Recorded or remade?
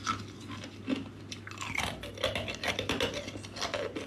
recorded